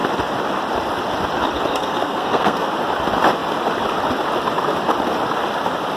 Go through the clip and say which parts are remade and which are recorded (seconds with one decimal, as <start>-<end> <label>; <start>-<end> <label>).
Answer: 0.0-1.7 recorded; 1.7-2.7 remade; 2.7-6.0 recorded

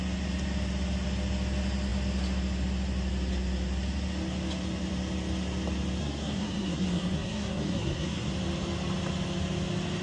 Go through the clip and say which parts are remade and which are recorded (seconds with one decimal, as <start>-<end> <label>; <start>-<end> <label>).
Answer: 0.0-6.0 recorded; 6.0-8.3 remade; 8.3-10.0 recorded

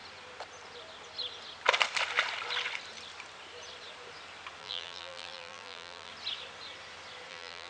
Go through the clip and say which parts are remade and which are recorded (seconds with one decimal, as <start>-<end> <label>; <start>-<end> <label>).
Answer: 0.0-4.6 recorded; 4.6-6.1 remade; 6.1-7.3 recorded; 7.3-7.7 remade

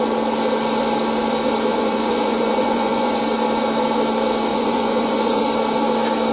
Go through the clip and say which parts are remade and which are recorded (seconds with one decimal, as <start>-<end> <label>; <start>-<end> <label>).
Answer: 0.0-1.7 recorded; 1.7-3.2 remade; 3.2-4.5 recorded; 4.5-5.4 remade; 5.4-6.3 recorded

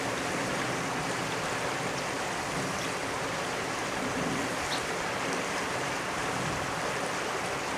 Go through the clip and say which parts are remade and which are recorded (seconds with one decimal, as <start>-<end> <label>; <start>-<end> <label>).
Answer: 0.0-3.0 recorded; 3.0-3.8 remade; 3.8-7.8 recorded